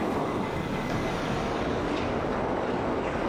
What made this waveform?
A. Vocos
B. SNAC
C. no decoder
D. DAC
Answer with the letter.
D